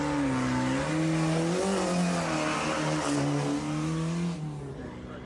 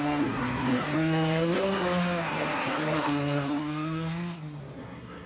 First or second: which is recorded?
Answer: first